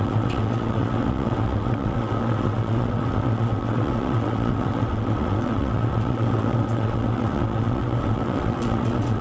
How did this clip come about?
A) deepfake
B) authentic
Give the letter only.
A